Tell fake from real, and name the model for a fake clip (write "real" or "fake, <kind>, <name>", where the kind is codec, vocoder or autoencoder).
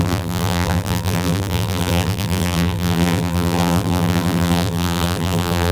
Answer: fake, vocoder, BigVGAN v2